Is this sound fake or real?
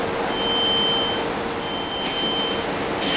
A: real